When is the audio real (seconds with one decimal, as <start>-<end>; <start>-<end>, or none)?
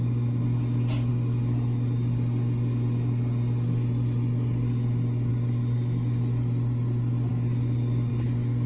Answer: 0.0-8.7